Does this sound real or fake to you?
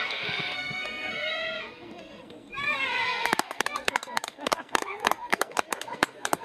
fake